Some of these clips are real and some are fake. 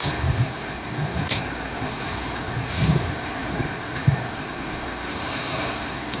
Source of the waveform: fake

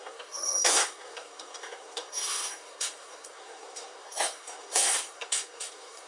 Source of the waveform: fake